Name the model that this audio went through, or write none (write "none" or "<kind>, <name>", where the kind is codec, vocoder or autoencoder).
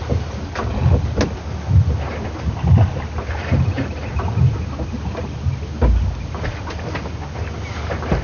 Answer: none